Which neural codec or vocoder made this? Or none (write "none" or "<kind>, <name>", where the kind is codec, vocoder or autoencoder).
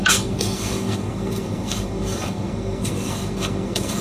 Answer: codec, SNAC